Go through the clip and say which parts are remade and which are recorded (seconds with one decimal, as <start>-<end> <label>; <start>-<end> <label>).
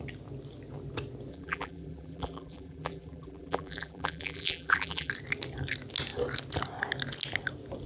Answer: 0.0-1.3 recorded; 1.3-5.1 remade; 5.1-7.9 recorded